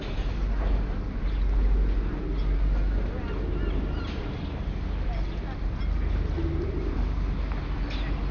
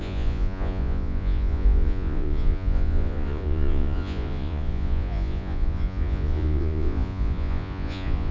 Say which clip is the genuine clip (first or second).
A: first